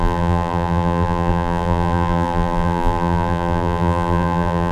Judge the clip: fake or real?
fake